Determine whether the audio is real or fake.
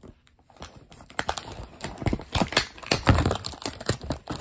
fake